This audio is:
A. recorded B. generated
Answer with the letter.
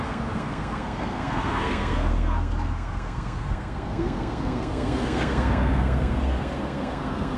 B